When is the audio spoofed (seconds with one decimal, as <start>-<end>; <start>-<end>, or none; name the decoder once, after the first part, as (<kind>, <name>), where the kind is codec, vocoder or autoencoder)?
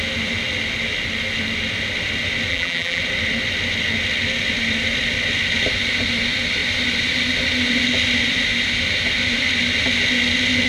2.5-3.0 (vocoder, BigVGAN v2)